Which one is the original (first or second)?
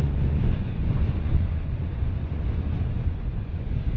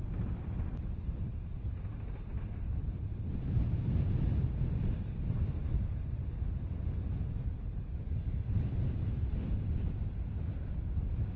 second